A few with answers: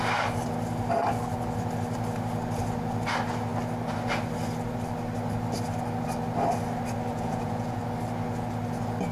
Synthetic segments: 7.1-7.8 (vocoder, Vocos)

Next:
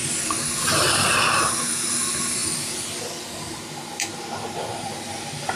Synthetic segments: 0.9-5.6 (vocoder, BigVGAN v2)